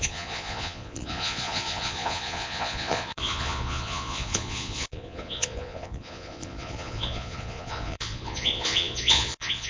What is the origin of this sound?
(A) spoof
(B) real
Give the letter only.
A